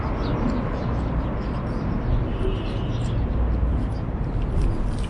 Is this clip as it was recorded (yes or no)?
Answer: yes